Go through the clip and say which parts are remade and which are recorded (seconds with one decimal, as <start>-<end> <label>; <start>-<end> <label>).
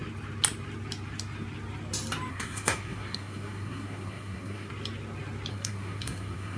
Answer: 0.0-2.3 recorded; 2.3-4.7 remade; 4.7-5.5 recorded; 5.5-6.6 remade